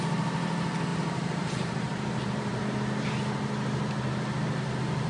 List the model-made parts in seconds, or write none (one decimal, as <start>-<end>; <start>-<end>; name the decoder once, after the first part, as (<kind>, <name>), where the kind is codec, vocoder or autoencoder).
0.9-2.6 (vocoder, BigVGAN v2)